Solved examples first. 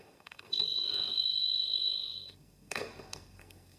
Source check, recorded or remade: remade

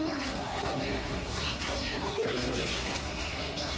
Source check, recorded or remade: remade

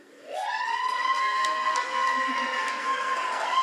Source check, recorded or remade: remade